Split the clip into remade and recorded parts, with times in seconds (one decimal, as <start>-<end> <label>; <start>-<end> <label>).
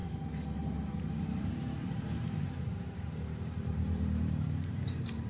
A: 0.0-1.9 recorded; 1.9-5.3 remade